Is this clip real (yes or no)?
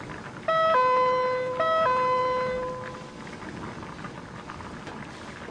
yes